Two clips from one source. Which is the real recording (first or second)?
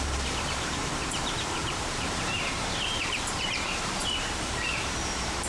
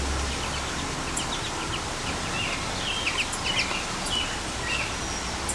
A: second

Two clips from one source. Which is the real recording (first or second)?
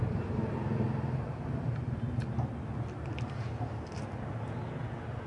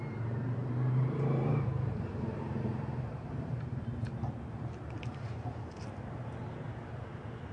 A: first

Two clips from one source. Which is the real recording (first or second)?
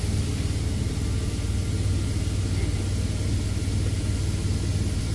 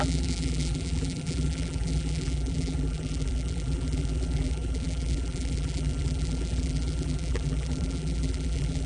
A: first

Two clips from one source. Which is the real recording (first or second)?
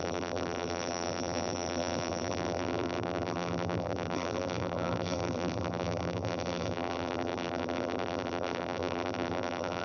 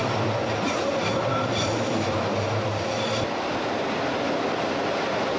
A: second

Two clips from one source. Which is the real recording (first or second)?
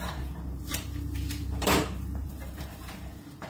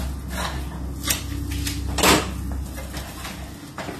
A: second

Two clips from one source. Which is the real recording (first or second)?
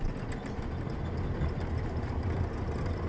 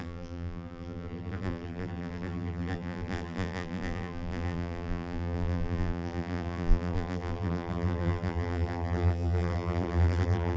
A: first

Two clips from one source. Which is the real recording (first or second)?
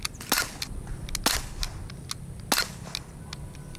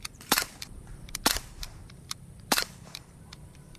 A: first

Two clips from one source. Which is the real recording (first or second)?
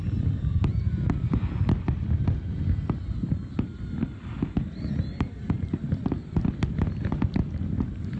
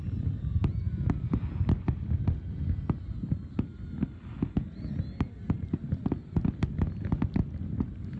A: second